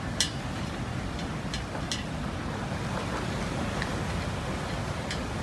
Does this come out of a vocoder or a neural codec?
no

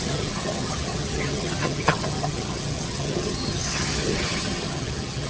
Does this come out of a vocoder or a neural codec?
yes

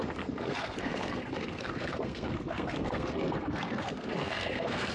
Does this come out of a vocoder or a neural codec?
yes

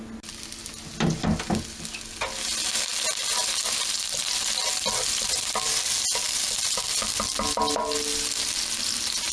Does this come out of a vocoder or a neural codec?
no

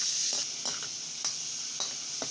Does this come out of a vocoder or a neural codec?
no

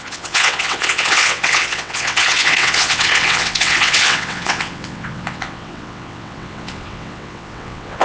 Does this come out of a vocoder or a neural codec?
yes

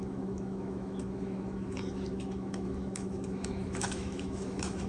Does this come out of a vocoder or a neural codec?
yes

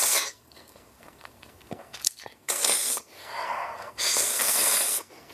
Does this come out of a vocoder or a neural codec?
yes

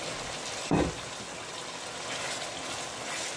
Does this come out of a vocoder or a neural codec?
no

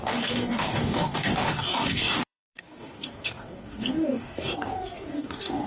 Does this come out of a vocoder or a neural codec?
yes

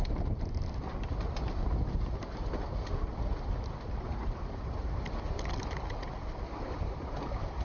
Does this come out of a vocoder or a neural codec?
no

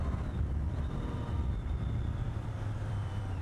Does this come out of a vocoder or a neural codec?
yes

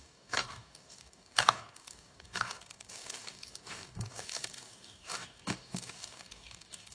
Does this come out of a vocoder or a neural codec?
yes